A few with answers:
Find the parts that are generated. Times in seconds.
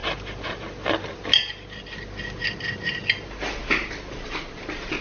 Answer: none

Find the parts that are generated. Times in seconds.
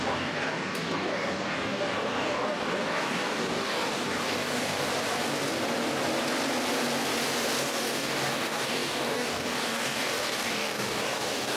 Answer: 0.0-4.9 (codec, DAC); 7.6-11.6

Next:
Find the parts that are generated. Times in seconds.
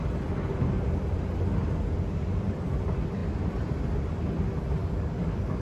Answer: 4.8-5.6 (codec, DAC)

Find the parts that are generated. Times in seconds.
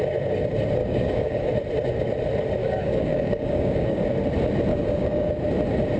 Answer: 0.8-1.5 (codec, DAC); 2.6-4.0; 4.7-5.3